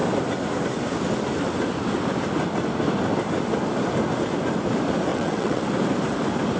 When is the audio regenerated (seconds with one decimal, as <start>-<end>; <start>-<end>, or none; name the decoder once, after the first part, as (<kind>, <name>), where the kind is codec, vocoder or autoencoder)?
5.1-5.7 (vocoder, WaveNeXt)